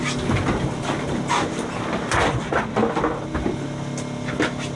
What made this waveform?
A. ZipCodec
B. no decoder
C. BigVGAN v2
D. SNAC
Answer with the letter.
B